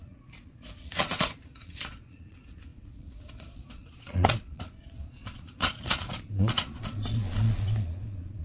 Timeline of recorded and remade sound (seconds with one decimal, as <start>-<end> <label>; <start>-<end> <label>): 0.0-8.4 remade